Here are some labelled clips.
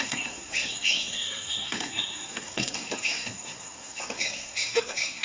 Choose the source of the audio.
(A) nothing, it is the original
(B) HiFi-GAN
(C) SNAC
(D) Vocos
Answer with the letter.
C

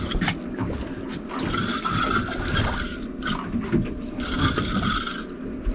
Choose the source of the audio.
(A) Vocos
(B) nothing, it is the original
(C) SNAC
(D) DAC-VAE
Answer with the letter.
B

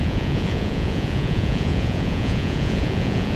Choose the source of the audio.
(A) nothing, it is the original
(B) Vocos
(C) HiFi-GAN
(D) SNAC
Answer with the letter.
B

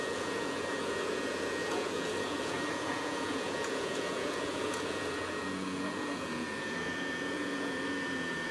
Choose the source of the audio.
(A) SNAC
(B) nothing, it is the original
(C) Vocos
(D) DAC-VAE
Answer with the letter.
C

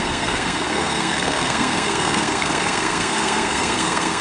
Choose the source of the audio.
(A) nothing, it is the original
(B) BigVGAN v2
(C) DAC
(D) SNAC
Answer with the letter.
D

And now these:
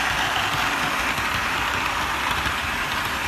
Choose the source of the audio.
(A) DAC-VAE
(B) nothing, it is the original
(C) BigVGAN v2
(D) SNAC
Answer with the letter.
B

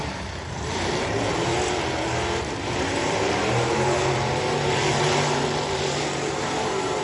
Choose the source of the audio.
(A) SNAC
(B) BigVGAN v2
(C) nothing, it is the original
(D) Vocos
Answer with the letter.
B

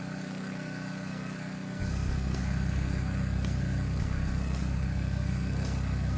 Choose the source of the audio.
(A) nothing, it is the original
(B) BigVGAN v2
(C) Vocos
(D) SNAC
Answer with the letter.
D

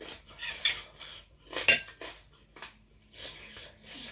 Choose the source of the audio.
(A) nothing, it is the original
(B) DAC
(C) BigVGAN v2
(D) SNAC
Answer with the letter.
A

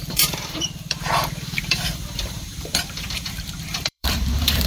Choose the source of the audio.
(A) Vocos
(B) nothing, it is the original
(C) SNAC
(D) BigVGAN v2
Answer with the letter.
D